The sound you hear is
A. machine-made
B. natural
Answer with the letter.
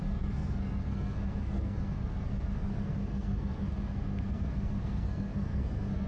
A